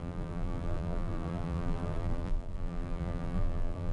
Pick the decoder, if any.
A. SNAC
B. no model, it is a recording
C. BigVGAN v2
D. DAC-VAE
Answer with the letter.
C